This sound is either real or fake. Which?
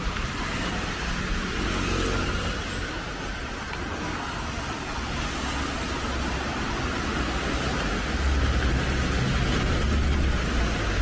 real